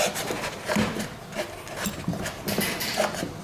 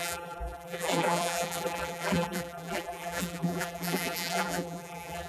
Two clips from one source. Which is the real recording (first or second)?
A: first